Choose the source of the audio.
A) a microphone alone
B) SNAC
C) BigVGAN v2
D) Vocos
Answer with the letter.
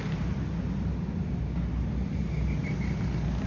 A